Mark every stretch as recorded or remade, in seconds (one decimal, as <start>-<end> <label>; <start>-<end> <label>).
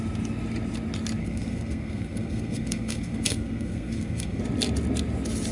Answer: 0.0-1.2 recorded; 1.2-4.4 remade; 4.4-5.5 recorded